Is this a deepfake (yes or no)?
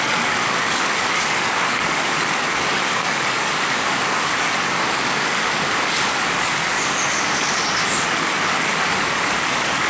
yes